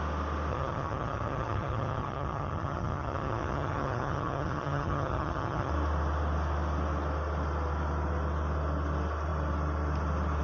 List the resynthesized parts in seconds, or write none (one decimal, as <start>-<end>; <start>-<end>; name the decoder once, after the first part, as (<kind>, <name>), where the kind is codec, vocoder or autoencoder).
0.5-5.7 (vocoder, HiFi-GAN)